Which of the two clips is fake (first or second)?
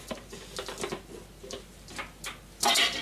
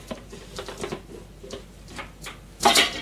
second